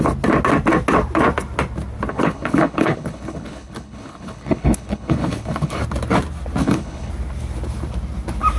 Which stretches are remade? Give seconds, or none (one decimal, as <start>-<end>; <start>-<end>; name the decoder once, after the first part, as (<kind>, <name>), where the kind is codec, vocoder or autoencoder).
2.1-5.8 (codec, HILCodec); 6.6-7.1